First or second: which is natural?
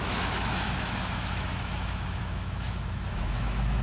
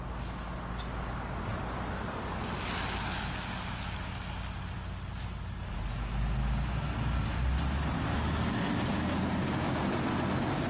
second